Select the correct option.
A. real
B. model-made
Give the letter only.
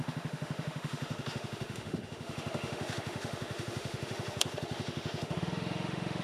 B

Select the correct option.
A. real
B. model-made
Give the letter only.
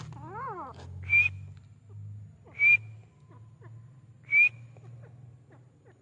A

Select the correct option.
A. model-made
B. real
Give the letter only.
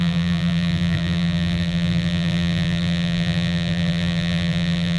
A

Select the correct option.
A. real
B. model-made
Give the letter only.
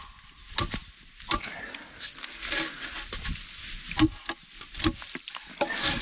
A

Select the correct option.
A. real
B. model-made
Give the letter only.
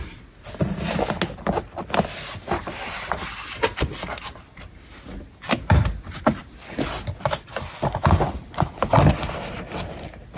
A